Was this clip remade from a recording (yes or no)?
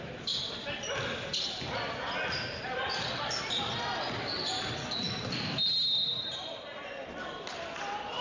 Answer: no